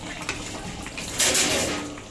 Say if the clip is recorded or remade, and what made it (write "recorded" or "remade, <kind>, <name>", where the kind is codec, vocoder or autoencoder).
recorded